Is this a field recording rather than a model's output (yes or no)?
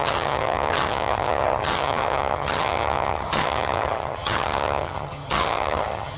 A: no